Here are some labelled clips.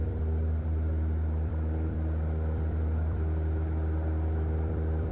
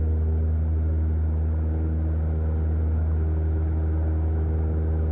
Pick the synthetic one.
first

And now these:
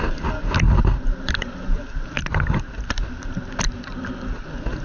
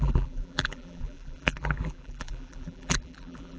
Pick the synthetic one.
second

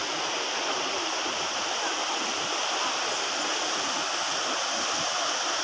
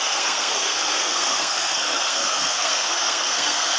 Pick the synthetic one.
second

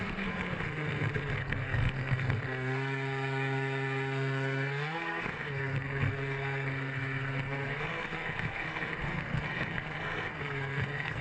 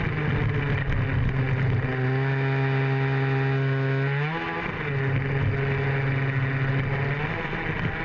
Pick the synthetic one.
first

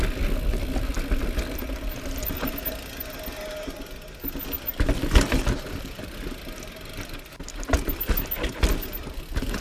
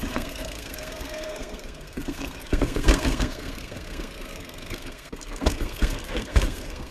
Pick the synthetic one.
second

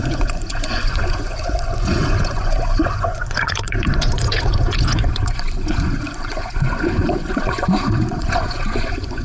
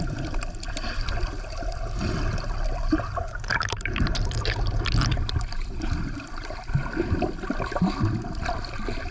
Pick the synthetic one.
first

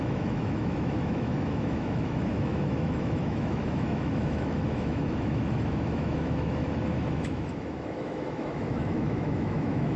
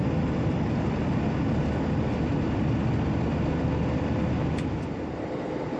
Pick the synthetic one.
first